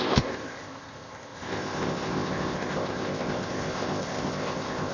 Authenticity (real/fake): fake